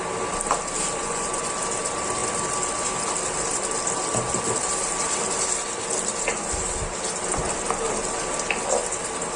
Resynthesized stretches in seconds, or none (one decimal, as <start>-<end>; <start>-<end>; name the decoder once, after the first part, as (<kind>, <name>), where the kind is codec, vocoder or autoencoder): 1.0-1.5 (vocoder, Vocos)